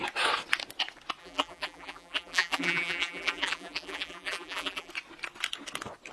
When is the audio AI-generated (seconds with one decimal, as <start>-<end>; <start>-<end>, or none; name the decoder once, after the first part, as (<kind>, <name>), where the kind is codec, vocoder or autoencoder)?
1.2-4.9 (vocoder, BigVGAN v2)